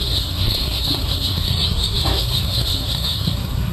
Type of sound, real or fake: fake